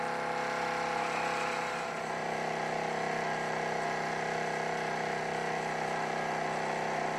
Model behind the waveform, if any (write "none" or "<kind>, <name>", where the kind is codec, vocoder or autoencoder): none